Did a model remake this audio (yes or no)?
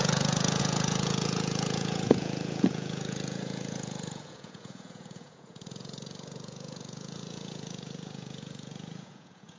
yes